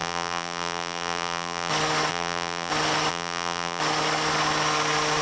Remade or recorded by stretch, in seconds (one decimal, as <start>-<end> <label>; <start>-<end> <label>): 0.0-1.7 remade; 1.7-2.1 recorded; 2.1-2.7 remade; 2.7-3.1 recorded; 3.1-3.8 remade; 3.8-5.2 recorded